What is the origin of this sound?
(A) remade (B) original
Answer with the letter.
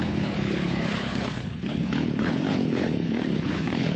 A